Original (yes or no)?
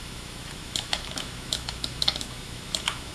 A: no